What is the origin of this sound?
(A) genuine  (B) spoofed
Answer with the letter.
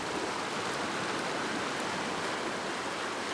A